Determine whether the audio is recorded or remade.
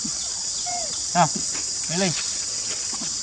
remade